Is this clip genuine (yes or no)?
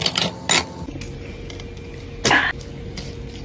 yes